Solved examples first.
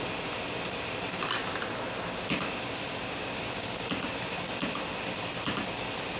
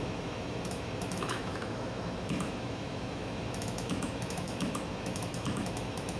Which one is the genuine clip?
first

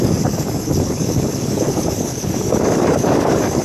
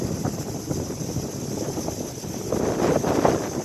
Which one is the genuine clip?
second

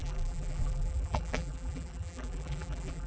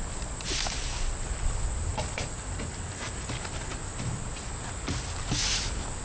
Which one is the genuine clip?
second